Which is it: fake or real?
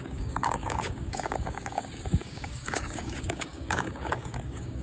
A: fake